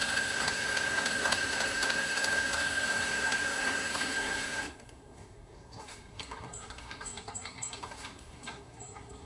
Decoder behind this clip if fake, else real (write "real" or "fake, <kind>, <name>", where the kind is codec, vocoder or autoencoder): fake, codec, SNAC